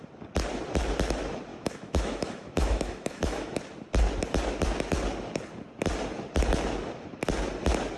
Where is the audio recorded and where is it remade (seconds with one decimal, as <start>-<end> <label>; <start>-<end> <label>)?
0.0-1.5 recorded; 1.5-3.5 remade; 3.5-8.0 recorded